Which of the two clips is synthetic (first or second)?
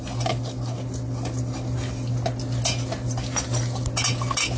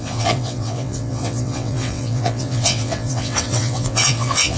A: second